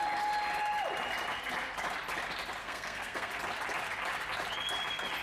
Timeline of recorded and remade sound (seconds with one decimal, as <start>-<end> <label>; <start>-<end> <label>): 0.0-2.6 recorded; 2.6-3.3 remade; 3.3-5.2 recorded